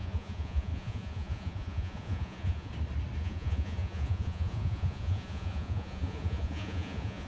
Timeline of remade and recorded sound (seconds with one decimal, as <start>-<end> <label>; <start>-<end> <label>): 0.0-2.7 remade; 2.7-3.2 recorded; 3.2-7.3 remade